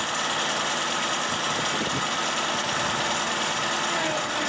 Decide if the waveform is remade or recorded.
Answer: recorded